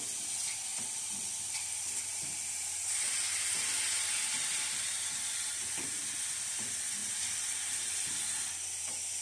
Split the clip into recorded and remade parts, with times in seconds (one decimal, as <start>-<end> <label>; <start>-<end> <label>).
0.0-0.7 recorded; 0.7-1.9 remade; 1.9-4.3 recorded; 4.3-6.0 remade; 6.0-9.2 recorded